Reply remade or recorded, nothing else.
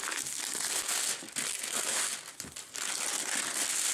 recorded